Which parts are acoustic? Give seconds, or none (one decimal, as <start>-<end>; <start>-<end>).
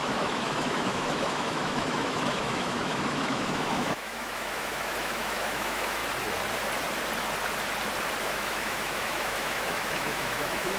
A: 6.0-8.2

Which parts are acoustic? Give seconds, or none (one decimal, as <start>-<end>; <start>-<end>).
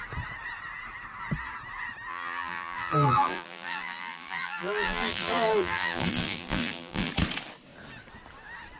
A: 0.0-2.1; 7.1-8.8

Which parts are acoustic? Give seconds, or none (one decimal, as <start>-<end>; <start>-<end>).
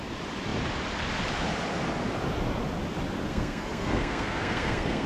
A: 0.0-3.3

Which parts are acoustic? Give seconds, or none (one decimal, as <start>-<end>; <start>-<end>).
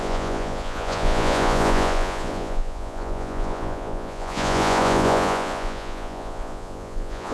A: none